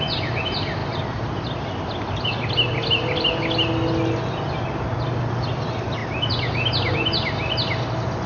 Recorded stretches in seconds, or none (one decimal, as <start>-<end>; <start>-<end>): 0.0-8.3